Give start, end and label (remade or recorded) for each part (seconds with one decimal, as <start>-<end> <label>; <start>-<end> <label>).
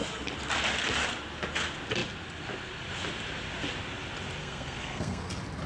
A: 0.0-4.4 recorded; 4.4-5.3 remade; 5.3-5.7 recorded